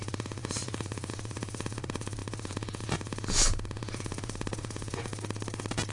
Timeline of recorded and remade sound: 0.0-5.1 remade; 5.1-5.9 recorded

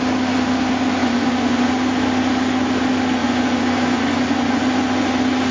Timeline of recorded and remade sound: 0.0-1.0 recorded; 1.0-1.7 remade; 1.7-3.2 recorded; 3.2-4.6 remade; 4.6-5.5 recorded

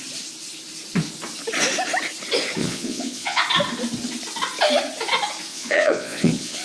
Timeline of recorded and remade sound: 0.0-2.6 recorded; 2.6-3.4 remade; 3.4-5.5 recorded; 5.5-6.6 remade